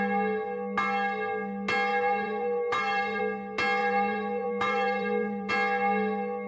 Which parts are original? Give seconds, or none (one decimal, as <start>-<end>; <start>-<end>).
0.0-1.9; 3.2-3.8; 5.5-6.5